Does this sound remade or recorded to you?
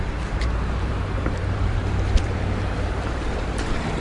remade